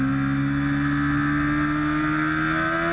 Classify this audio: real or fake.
real